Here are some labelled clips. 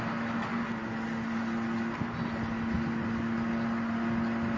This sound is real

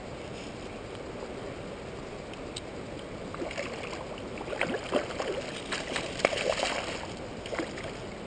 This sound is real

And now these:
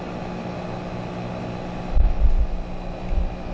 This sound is real